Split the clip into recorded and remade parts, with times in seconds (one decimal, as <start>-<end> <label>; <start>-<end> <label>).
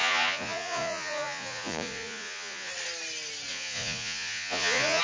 0.0-2.7 remade; 2.7-3.5 recorded; 3.5-5.0 remade